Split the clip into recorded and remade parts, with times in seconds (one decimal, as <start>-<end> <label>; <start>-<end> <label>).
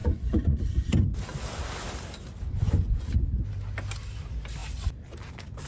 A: 0.0-0.9 remade; 0.9-2.5 recorded; 2.5-3.1 remade; 3.1-5.7 recorded